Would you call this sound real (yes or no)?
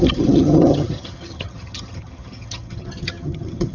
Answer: no